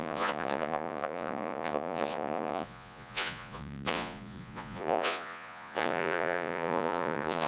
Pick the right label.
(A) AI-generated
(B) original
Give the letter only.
A